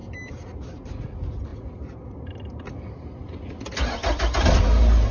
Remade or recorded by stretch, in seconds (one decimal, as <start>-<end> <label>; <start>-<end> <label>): 0.0-5.1 recorded